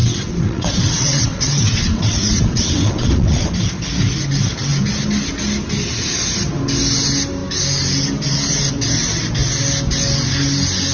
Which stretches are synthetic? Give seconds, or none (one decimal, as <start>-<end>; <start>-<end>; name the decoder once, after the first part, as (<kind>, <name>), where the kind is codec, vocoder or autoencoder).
0.0-3.5 (vocoder, WaveNeXt)